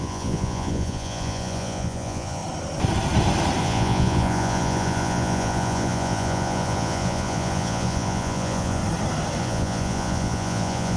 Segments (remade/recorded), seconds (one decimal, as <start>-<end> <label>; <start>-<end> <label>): 0.0-2.4 remade; 2.4-3.6 recorded; 3.6-8.8 remade; 8.8-9.4 recorded; 9.4-11.0 remade